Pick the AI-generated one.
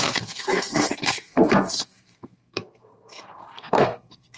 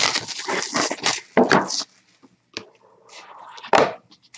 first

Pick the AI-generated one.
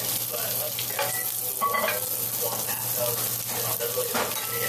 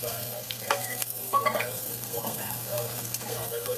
second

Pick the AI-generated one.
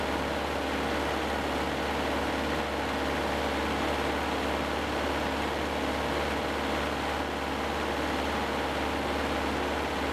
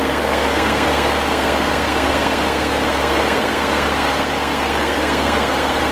second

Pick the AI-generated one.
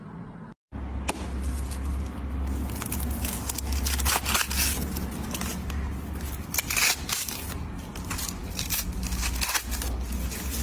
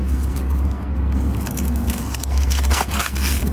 second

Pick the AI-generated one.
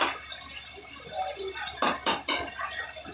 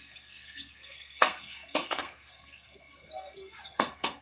second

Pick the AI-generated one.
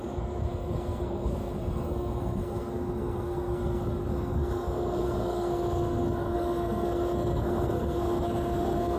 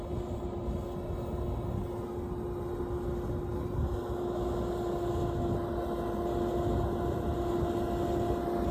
first